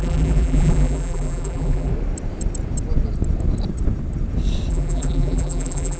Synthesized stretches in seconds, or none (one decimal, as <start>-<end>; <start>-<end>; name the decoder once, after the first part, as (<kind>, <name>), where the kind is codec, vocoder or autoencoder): 0.0-1.9 (vocoder, BigVGAN v2); 4.7-6.0